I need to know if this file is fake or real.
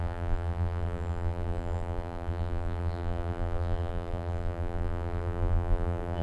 fake